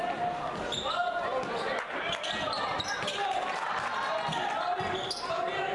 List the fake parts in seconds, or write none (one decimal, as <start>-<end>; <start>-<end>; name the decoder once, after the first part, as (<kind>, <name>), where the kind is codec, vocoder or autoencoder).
none